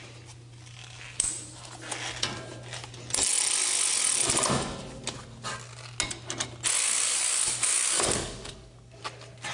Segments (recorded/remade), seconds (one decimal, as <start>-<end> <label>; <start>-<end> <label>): 0.0-6.8 recorded; 6.8-9.0 remade; 9.0-9.5 recorded